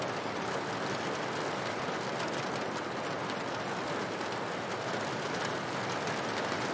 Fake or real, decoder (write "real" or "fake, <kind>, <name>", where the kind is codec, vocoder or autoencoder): real